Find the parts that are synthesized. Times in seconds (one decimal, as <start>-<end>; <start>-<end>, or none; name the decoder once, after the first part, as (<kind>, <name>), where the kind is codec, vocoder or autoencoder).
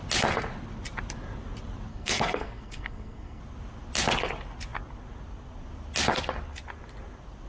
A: 1.9-3.4 (codec, SNAC)